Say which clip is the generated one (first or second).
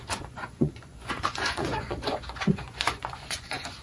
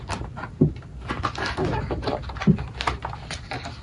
first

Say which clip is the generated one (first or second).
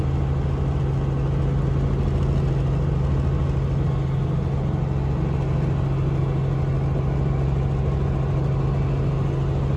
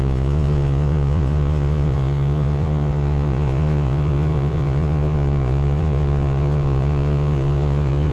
second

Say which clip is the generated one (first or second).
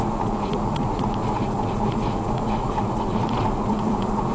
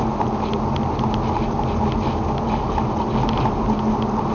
first